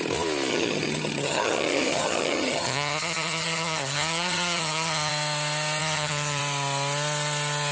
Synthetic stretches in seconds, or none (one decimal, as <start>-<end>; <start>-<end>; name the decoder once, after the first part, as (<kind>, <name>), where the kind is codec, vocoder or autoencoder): 0.5-5.1 (vocoder, HiFi-GAN); 5.8-6.4